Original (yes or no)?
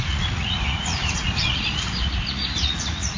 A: no